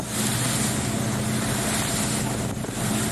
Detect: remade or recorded recorded